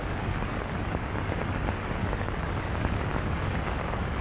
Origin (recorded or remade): remade